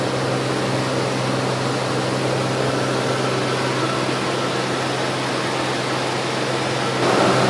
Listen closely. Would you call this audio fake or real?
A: real